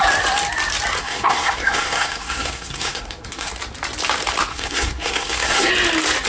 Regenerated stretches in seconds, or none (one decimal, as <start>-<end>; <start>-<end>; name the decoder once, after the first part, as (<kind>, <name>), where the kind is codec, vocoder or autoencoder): 1.0-3.5 (codec, SNAC); 4.5-5.7